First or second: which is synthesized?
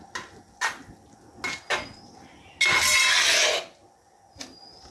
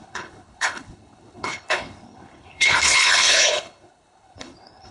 second